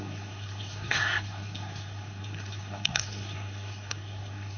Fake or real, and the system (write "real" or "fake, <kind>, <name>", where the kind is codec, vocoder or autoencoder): fake, codec, SNAC